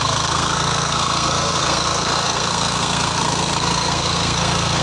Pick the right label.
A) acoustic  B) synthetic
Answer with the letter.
B